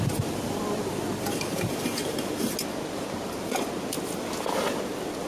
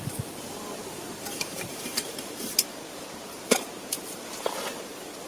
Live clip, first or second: first